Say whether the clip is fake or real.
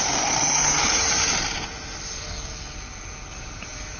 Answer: real